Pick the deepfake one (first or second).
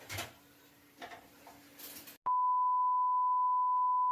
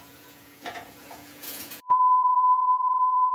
second